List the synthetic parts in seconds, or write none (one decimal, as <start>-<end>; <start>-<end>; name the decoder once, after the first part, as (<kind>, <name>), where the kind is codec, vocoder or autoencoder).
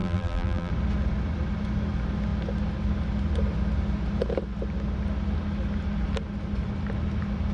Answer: 0.0-0.7 (vocoder, BigVGAN v2)